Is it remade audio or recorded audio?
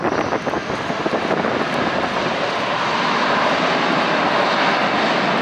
recorded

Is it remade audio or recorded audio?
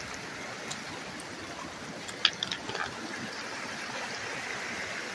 recorded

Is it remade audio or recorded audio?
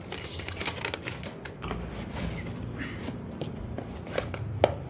recorded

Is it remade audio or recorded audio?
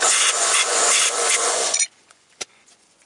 remade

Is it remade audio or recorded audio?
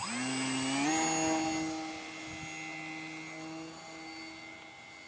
recorded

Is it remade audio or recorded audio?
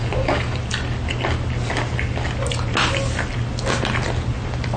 recorded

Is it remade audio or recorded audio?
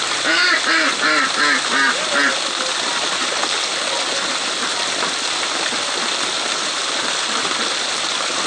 recorded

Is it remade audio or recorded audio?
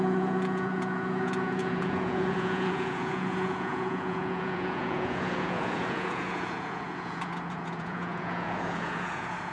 remade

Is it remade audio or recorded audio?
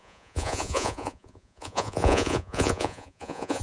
remade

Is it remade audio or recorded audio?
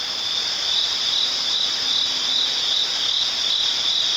recorded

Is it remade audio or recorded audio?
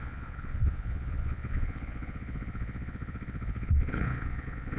remade